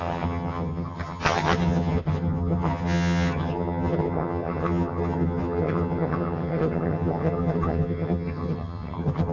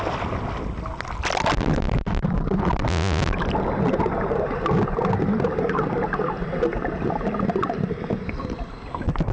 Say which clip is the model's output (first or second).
first